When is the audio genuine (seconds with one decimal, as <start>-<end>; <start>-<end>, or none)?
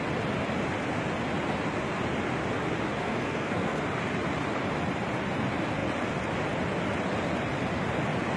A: 0.0-3.0; 3.8-8.4